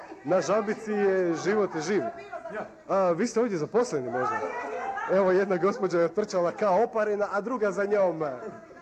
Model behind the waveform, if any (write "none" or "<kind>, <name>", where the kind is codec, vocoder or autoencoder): none